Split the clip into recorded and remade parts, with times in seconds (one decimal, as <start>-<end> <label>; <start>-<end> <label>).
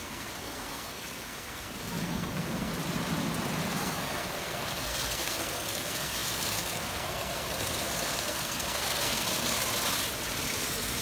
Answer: 0.0-2.7 remade; 2.7-3.7 recorded; 3.7-9.6 remade; 9.6-10.6 recorded; 10.6-11.0 remade